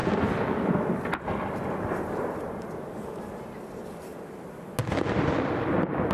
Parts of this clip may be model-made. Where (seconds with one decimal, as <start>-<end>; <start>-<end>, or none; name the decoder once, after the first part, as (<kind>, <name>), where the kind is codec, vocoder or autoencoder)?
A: none